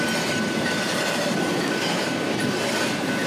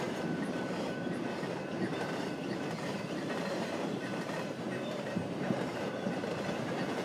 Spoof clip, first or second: second